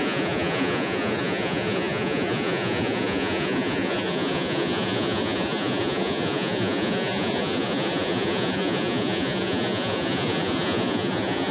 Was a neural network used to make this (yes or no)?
yes